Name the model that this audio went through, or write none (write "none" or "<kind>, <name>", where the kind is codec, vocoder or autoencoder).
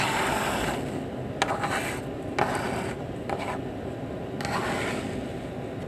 none